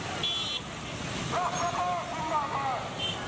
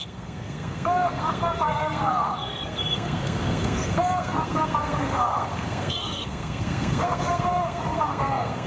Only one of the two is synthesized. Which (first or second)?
second